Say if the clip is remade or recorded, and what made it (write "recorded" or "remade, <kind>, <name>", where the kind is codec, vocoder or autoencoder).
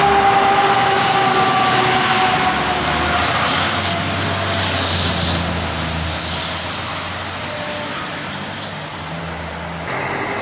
recorded